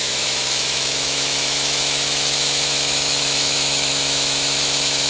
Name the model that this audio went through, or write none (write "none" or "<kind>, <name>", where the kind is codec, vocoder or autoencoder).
autoencoder, DAC-VAE